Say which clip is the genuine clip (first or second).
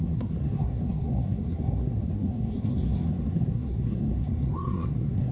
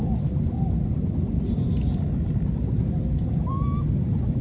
second